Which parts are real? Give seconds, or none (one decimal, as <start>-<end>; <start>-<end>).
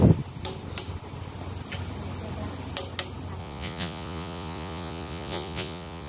0.0-3.4